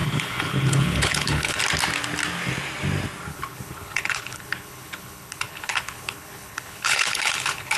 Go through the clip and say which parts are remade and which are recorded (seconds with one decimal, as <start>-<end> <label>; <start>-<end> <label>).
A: 0.0-1.6 remade; 1.6-3.3 recorded; 3.3-7.8 remade